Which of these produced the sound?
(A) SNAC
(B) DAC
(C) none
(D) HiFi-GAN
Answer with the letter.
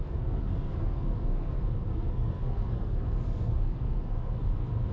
A